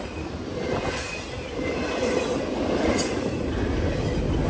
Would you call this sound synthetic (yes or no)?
no